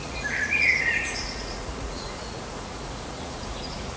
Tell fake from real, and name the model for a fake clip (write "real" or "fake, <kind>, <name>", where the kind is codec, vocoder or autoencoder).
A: fake, vocoder, Vocos